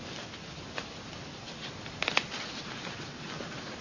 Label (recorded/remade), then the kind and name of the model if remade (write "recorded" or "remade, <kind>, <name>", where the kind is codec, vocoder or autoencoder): recorded